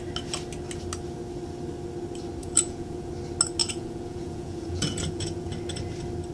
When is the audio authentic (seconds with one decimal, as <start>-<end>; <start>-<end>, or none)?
0.0-2.4; 3.1-3.6; 5.5-6.3